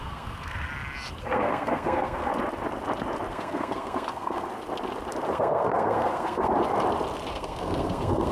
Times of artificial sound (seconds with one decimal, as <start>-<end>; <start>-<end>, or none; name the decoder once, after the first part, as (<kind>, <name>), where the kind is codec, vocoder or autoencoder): 0.0-0.7 (codec, SNAC); 1.2-2.3; 3.3-4.5; 5.3-6.5; 7.3-8.3